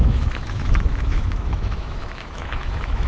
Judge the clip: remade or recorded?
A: remade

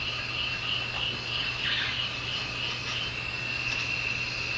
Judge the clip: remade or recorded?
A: recorded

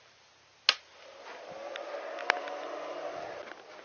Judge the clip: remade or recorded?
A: recorded